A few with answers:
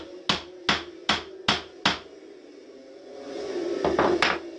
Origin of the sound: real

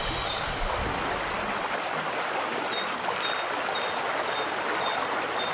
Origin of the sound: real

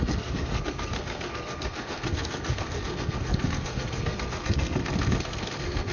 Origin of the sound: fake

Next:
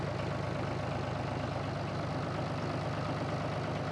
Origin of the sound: real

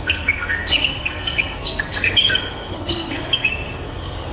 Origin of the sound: fake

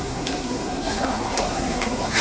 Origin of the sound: fake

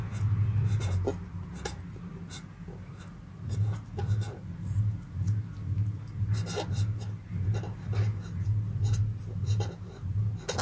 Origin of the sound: real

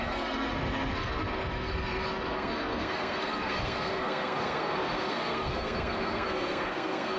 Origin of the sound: fake